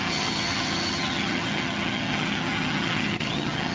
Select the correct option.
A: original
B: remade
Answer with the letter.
B